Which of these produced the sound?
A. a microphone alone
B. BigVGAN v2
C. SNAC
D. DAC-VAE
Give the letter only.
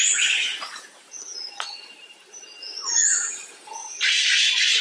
A